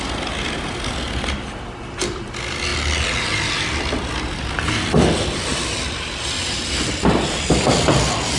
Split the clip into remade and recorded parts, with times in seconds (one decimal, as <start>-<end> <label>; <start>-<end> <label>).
0.0-2.7 recorded; 2.7-7.7 remade; 7.7-8.4 recorded

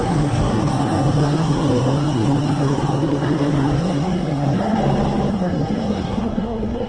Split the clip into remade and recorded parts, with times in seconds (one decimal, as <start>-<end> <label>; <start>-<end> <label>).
0.0-4.8 remade; 4.8-5.3 recorded; 5.3-6.9 remade

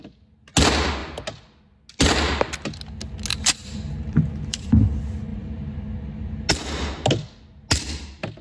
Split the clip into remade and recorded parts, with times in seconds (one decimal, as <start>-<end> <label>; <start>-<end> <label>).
0.0-3.3 recorded; 3.3-4.7 remade; 4.7-5.3 recorded; 5.3-5.8 remade; 5.8-8.4 recorded

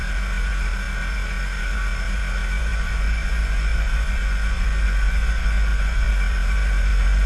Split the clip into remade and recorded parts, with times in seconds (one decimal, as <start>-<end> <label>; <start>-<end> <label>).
0.0-2.6 recorded; 2.6-6.1 remade; 6.1-7.3 recorded

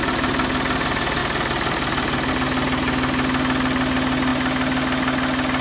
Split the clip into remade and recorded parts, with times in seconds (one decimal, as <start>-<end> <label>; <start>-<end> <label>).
0.0-5.6 recorded

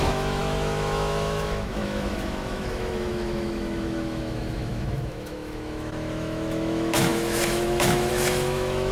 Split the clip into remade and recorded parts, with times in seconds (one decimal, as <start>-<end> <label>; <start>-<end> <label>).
0.0-8.9 remade